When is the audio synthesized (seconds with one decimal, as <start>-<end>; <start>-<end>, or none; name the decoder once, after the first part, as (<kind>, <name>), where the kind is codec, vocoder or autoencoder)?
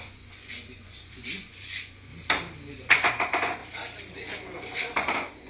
0.0-2.1 (vocoder, Vocos); 2.9-3.6; 5.0-5.5